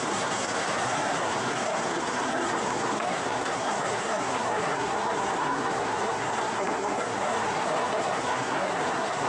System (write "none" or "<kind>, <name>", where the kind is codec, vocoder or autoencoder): codec, SNAC